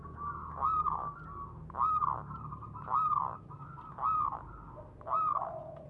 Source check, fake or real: real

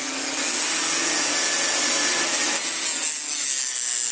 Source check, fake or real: real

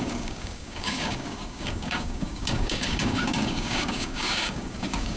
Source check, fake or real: fake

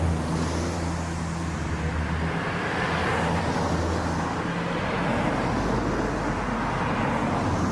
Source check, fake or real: real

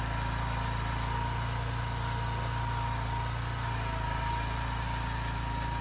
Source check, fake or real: real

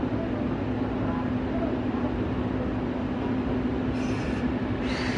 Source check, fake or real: real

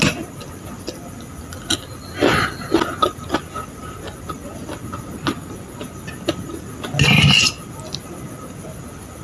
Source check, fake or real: real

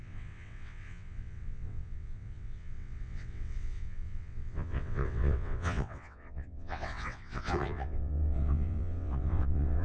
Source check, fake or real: fake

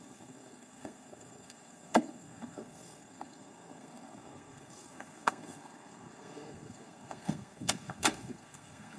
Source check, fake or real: fake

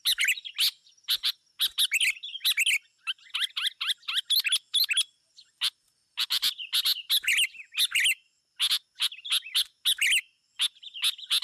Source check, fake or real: real